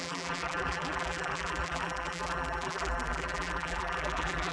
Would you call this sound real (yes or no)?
no